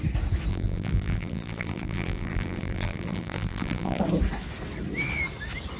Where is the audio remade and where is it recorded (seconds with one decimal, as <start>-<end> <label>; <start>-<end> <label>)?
0.0-0.5 recorded; 0.5-4.0 remade; 4.0-5.8 recorded